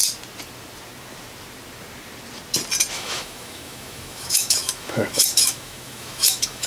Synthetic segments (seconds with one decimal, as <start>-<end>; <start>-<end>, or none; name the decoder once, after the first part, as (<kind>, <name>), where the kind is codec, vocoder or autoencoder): 2.9-6.7 (autoencoder, DAC-VAE)